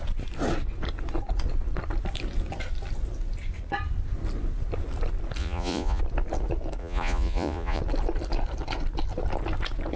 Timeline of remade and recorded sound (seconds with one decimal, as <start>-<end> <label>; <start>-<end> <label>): 0.0-5.4 recorded; 5.4-6.0 remade; 6.0-6.8 recorded; 6.8-7.8 remade; 7.8-10.0 recorded